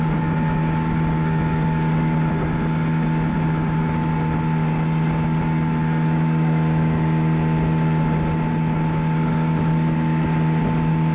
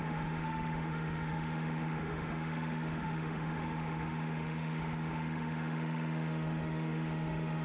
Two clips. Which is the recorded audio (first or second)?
first